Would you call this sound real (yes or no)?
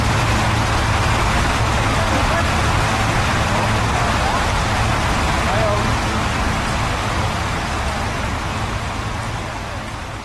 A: no